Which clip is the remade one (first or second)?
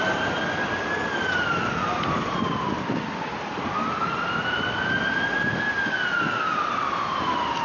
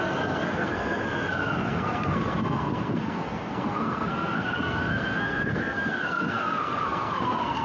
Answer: second